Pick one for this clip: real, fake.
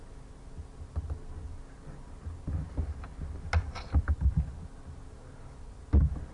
real